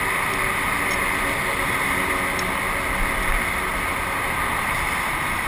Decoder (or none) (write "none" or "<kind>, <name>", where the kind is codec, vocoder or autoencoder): none